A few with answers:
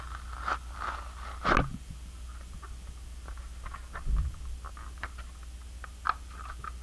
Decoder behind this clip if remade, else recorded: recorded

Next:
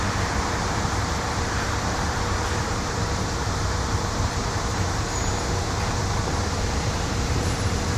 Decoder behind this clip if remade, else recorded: remade, vocoder, BigVGAN v2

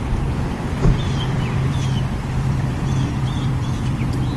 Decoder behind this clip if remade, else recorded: remade, vocoder, BigVGAN v2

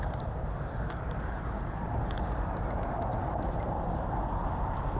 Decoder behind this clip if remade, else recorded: remade, vocoder, BigVGAN v2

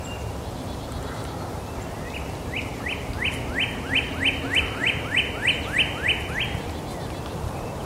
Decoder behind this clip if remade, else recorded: recorded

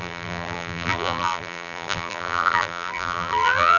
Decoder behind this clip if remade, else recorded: remade, vocoder, BigVGAN v2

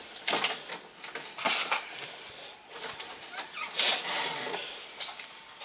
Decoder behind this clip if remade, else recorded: recorded